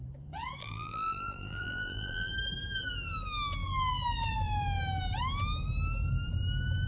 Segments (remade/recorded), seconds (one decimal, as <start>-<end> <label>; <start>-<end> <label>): 0.0-0.6 recorded; 0.6-2.3 remade; 2.3-6.9 recorded